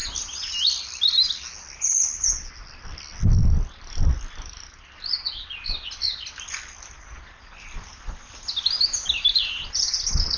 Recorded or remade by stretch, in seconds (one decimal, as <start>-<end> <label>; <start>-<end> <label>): 0.0-10.4 recorded